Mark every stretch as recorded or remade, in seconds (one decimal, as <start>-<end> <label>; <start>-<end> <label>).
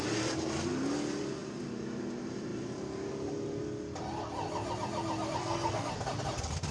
0.0-5.4 recorded; 5.4-5.9 remade; 5.9-6.7 recorded